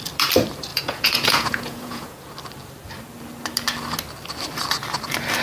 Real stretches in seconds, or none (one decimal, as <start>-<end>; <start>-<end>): 0.0-0.7; 2.2-5.4

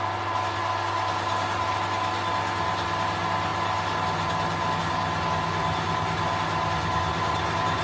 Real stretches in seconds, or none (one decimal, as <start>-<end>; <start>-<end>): 0.0-7.8